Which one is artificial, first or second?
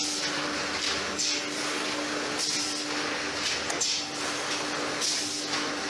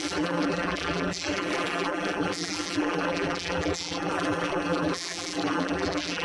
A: second